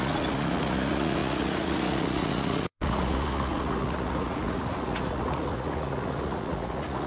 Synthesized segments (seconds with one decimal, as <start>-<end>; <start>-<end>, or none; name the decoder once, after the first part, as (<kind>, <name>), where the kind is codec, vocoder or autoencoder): 0.0-7.1 (vocoder, Vocos)